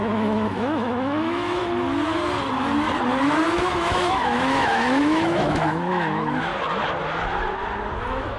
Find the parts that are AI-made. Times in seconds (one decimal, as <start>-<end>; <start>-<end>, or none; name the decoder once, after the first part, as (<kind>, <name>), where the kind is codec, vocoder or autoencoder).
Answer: 0.0-1.6 (autoencoder, DAC-VAE); 3.5-6.5; 8.0-8.4